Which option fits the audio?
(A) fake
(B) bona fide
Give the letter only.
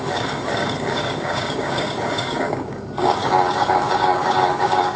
A